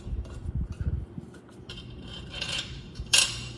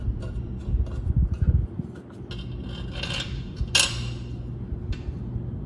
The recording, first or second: second